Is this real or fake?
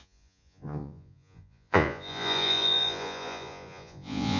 fake